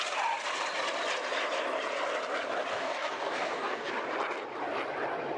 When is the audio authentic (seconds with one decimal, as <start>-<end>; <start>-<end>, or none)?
0.0-2.7; 3.9-5.4